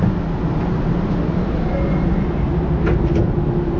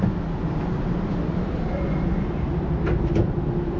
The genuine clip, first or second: first